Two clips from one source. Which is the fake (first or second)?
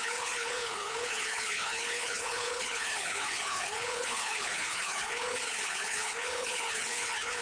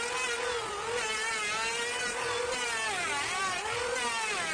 first